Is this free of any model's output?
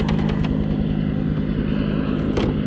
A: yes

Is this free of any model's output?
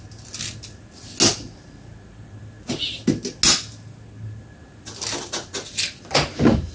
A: yes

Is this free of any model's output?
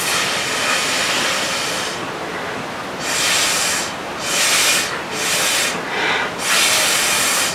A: yes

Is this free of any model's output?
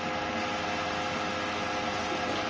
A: yes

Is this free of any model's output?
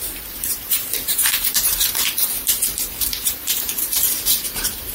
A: no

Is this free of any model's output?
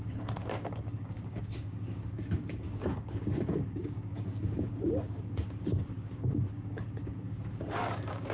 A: no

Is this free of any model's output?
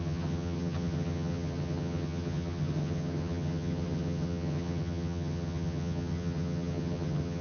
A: no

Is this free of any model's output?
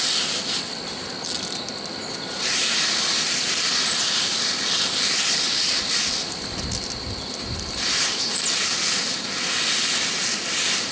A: yes